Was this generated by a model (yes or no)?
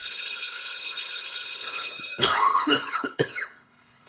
yes